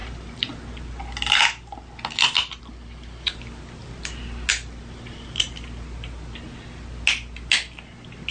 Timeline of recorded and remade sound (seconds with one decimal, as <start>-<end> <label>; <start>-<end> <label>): 0.0-8.3 recorded